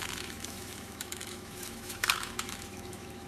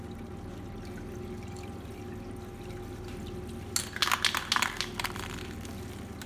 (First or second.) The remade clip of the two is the first